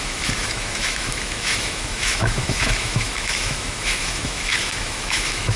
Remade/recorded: remade